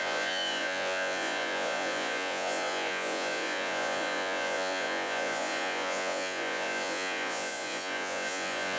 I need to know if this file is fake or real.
fake